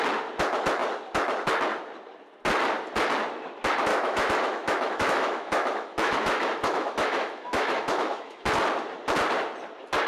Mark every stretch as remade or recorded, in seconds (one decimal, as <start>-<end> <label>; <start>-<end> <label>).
0.0-3.9 recorded; 3.9-8.5 remade; 8.5-10.1 recorded